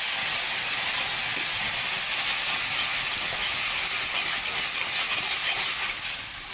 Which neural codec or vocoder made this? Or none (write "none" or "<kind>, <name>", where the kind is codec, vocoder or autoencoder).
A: none